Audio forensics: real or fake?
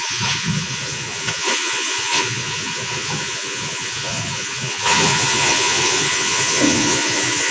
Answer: fake